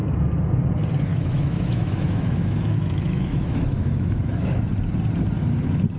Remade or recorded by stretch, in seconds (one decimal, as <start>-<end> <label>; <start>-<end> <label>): 0.0-1.1 recorded; 1.1-4.7 remade; 4.7-6.0 recorded